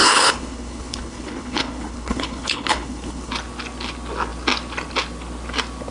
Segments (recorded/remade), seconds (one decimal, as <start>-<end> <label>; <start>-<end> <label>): 0.0-3.3 remade; 3.3-5.9 recorded